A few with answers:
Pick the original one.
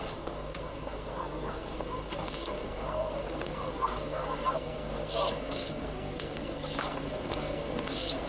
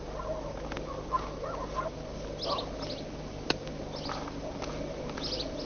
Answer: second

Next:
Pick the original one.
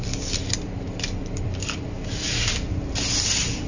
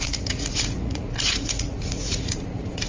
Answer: first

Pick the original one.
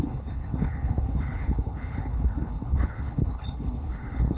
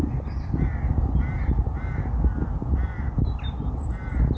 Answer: second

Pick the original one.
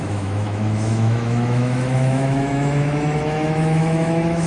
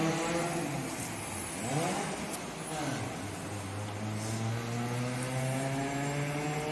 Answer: second